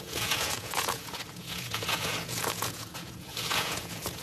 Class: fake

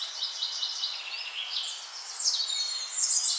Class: real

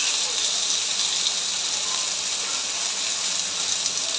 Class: real